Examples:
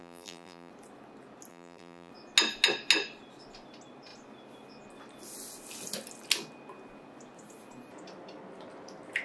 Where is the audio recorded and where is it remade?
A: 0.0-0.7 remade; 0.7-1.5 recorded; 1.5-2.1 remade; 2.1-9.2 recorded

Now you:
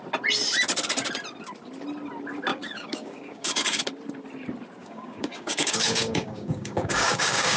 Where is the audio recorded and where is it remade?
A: 0.0-2.5 recorded; 2.5-3.8 remade; 3.8-4.8 recorded; 4.8-7.6 remade

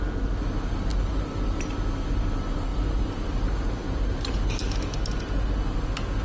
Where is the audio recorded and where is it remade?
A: 0.0-0.9 recorded; 0.9-2.1 remade; 2.1-2.7 recorded; 2.7-4.5 remade; 4.5-6.2 recorded

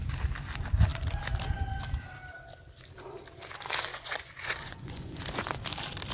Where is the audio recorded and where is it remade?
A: 0.0-3.9 recorded; 3.9-5.2 remade; 5.2-6.1 recorded

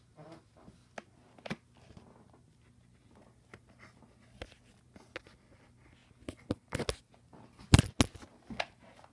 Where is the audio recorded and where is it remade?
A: 0.0-9.1 recorded

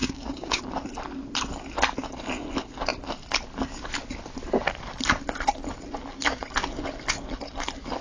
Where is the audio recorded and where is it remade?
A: 0.0-0.6 remade; 0.6-8.0 recorded

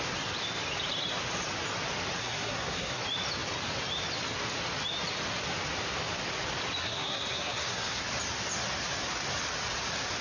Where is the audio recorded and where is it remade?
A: 0.0-2.2 recorded; 2.2-3.0 remade; 3.0-6.8 recorded; 6.8-8.0 remade; 8.0-10.2 recorded

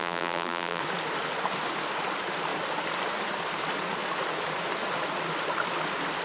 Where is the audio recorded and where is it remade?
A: 0.0-0.8 remade; 0.8-6.2 recorded